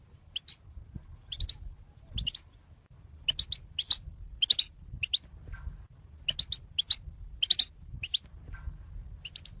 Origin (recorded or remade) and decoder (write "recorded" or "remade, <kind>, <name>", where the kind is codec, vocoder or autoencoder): recorded